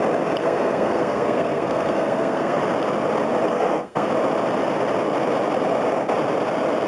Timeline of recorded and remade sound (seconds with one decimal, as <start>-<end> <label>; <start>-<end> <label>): 0.0-0.4 recorded; 0.4-2.6 remade; 2.6-3.5 recorded; 3.5-4.1 remade; 4.1-6.9 recorded